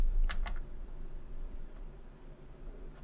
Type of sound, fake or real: fake